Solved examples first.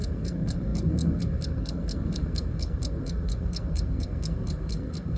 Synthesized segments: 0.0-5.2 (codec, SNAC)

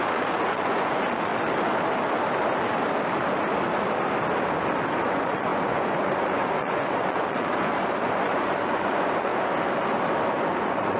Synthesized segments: 0.0-1.3 (vocoder, Vocos); 5.0-9.3; 10.6-11.0

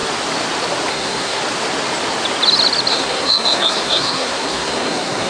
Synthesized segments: 0.9-1.4 (codec, SNAC); 2.9-5.3

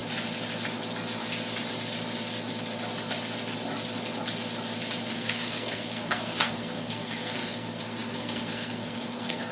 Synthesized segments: 5.1-9.5 (codec, SNAC)

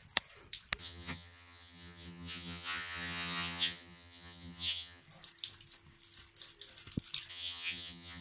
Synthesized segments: 0.8-5.0 (vocoder, HiFi-GAN); 7.3-8.2

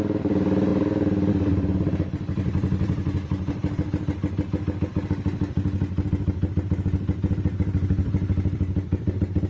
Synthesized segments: 0.0-3.6 (vocoder, BigVGAN v2); 8.0-9.5

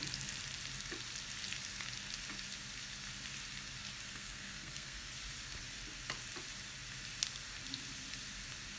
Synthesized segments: 4.1-5.1 (codec, SNAC)